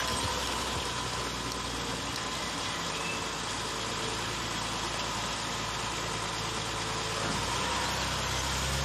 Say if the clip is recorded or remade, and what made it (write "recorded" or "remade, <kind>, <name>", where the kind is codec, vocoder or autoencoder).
recorded